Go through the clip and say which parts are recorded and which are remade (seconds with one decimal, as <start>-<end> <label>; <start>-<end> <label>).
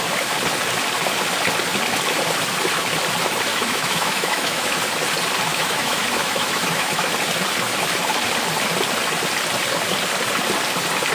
0.0-3.5 recorded; 3.5-4.8 remade; 4.8-5.5 recorded; 5.5-7.1 remade; 7.1-11.1 recorded